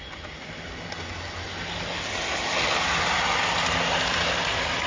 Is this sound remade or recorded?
recorded